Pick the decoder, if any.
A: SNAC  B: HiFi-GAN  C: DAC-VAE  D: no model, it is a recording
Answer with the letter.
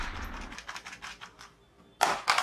D